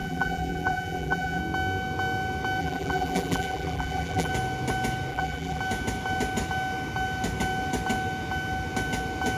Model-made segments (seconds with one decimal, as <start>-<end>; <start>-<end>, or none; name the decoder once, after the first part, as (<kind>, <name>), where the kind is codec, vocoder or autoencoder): 0.0-1.4 (vocoder, BigVGAN v2); 2.6-4.3; 5.1-5.6